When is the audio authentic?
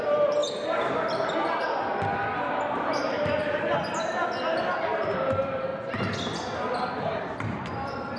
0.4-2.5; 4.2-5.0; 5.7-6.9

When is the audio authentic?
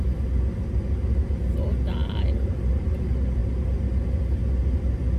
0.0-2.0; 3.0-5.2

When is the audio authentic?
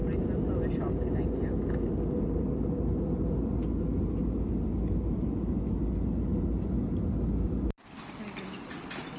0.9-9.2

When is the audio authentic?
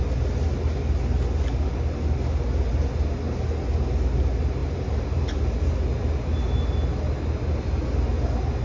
0.0-4.6; 5.7-8.6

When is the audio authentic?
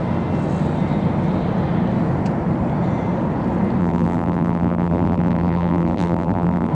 0.0-3.8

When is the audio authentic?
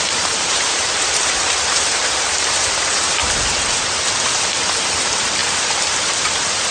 5.4-5.9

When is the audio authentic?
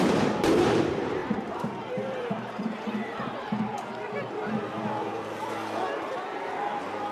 3.7-7.1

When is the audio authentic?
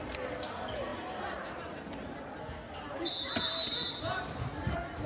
0.0-0.9; 3.9-5.1